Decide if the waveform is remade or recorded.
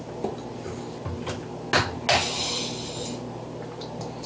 recorded